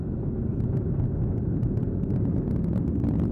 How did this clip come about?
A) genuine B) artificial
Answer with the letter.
A